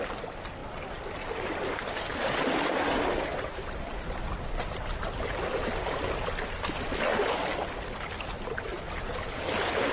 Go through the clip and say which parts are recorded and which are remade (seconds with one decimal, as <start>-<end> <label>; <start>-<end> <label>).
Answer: 0.0-8.7 recorded; 8.7-9.4 remade; 9.4-9.9 recorded